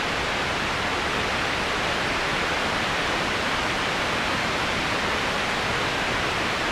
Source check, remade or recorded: recorded